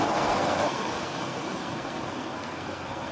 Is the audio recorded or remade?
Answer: remade